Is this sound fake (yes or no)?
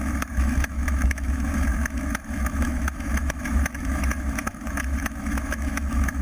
yes